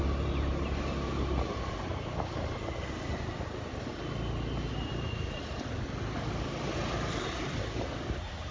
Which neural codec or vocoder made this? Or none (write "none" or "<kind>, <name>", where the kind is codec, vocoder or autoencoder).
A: none